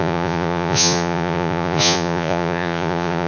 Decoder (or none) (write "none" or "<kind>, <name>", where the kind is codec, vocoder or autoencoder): vocoder, Vocos